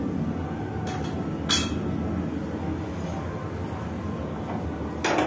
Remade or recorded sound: recorded